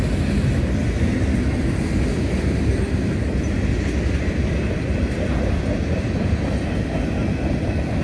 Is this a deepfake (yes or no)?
no